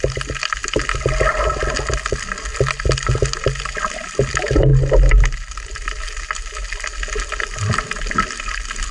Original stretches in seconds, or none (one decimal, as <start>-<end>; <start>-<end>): 0.0-8.9